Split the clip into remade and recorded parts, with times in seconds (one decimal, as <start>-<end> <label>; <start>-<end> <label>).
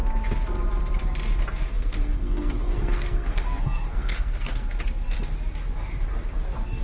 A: 0.0-1.7 recorded; 1.7-4.7 remade; 4.7-6.8 recorded